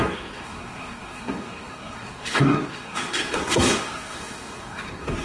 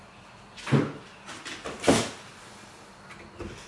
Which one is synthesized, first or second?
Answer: first